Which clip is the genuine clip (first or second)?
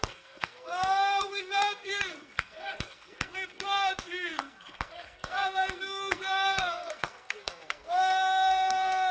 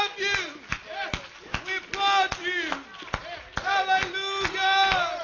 second